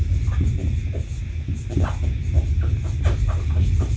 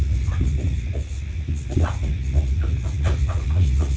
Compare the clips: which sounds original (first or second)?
first